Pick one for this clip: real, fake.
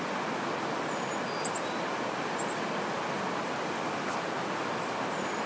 real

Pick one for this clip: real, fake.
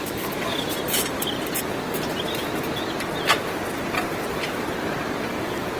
real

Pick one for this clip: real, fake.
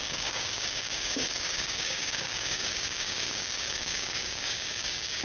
fake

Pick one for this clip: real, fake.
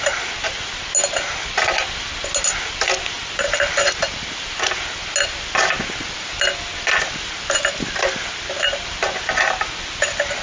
real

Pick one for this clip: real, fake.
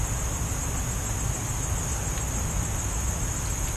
real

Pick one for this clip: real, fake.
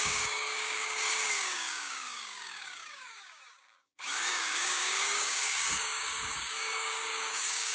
fake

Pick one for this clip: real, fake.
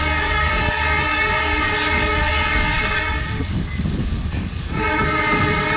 fake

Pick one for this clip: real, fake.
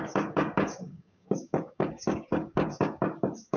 fake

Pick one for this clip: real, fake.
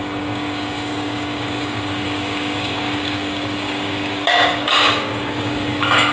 fake